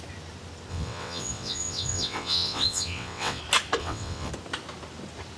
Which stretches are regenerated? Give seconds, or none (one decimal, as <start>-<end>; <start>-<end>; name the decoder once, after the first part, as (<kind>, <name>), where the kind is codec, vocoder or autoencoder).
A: 0.7-3.4 (vocoder, WaveNeXt); 3.8-4.3